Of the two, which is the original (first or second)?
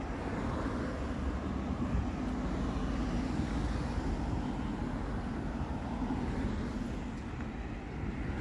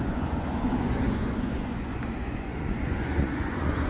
first